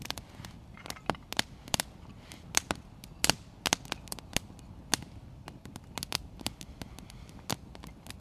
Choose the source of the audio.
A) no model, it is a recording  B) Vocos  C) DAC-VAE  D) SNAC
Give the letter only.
A